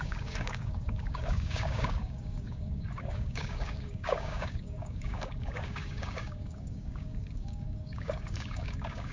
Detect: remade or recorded remade